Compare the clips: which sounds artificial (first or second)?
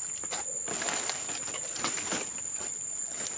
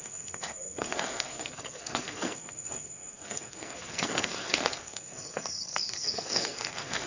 second